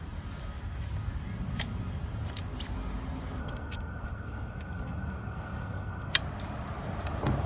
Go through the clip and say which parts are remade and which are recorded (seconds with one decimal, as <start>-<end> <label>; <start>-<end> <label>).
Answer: 0.0-3.4 recorded; 3.4-6.1 remade; 6.1-7.5 recorded